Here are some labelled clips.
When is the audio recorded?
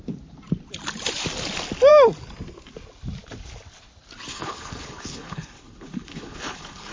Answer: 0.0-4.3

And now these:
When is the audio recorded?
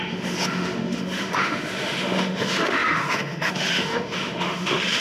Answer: none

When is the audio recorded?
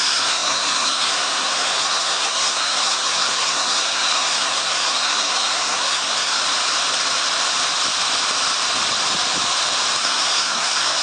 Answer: 6.4-10.0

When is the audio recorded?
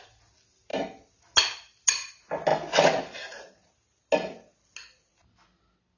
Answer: 0.0-6.0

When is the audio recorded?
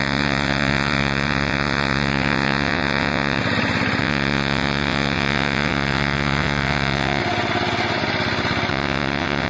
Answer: 3.4-4.0; 7.2-8.7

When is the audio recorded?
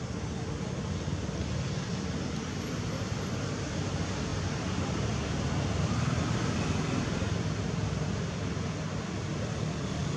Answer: 0.0-10.2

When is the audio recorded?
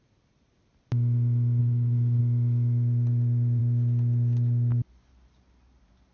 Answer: 0.0-1.6; 2.2-6.1